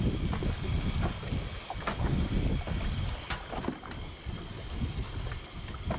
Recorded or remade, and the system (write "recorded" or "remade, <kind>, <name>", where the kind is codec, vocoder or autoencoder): recorded